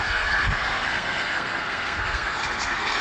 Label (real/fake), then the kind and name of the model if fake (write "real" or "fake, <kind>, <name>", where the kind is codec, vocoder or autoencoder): fake, codec, SNAC